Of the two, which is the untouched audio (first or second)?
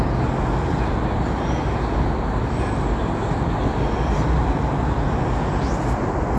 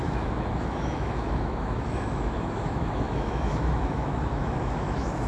first